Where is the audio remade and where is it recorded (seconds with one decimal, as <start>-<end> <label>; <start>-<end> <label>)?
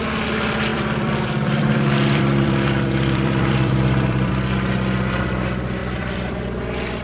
0.0-0.7 recorded; 0.7-4.3 remade; 4.3-5.8 recorded; 5.8-7.0 remade